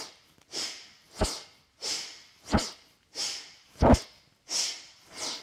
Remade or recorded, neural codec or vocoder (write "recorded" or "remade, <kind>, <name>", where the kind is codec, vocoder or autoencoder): recorded